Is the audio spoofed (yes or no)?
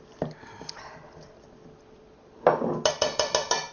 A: no